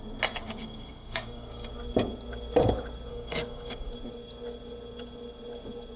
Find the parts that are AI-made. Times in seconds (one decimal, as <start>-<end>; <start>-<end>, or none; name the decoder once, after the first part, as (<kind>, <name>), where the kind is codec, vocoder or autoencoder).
0.4-1.7 (codec, DAC); 3.1-3.9